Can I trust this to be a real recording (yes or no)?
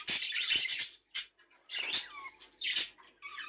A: yes